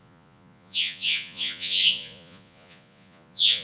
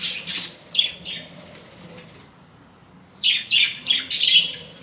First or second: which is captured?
second